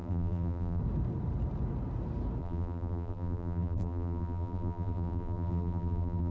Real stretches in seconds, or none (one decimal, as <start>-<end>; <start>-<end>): 0.8-2.4